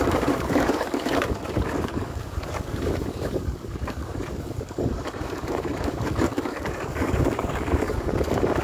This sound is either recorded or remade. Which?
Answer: remade